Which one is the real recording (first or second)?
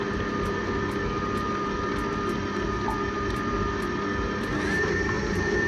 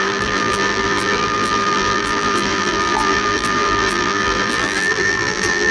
first